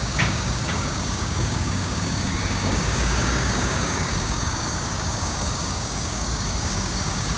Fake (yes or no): yes